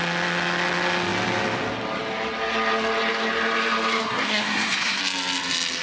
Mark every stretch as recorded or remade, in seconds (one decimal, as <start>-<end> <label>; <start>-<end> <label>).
0.0-4.0 recorded; 4.0-5.0 remade; 5.0-5.8 recorded